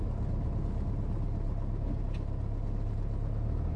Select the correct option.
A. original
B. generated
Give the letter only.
A